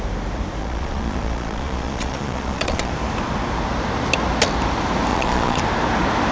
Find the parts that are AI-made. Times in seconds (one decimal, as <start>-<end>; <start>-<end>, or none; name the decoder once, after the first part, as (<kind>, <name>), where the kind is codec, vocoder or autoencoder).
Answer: 0.6-2.9 (vocoder, Vocos); 5.1-5.6